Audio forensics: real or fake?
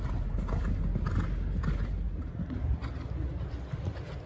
real